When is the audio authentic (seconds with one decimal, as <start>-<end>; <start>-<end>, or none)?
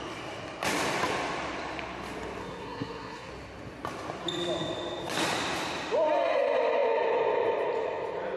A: 0.0-2.4; 3.3-8.4